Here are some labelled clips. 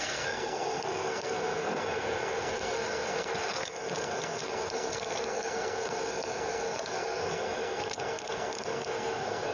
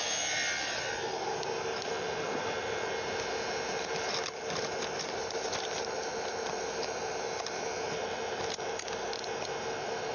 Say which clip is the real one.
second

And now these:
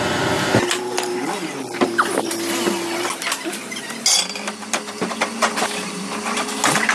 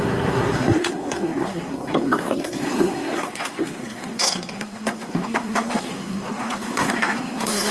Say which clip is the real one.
first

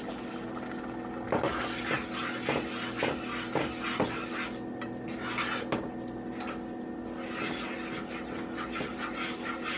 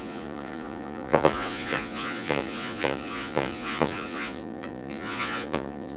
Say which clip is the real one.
first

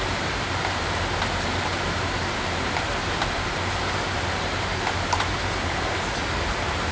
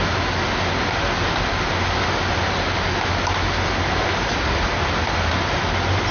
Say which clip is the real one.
second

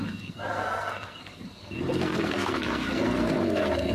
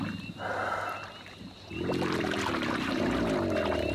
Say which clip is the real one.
second